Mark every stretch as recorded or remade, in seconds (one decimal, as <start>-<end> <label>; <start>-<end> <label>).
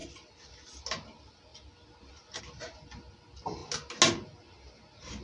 0.0-0.5 remade; 0.5-1.5 recorded; 1.5-2.4 remade; 2.4-5.2 recorded